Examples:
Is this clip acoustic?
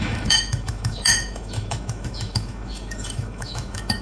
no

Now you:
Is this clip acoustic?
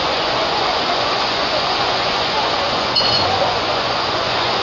no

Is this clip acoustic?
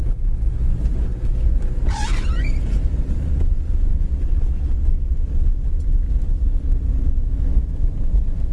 no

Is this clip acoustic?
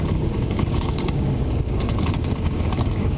no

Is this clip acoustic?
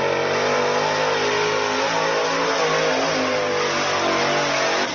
yes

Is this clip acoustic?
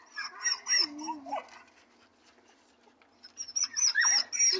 yes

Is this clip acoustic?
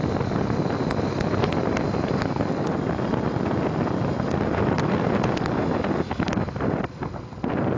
yes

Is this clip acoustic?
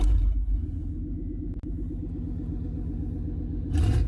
yes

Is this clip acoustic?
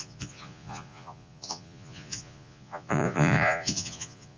no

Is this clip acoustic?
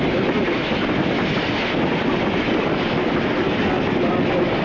yes